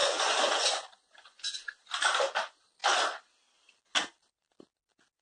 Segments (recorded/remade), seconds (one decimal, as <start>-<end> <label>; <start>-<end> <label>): 0.0-1.8 remade; 1.8-5.2 recorded